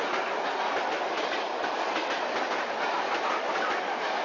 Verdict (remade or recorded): recorded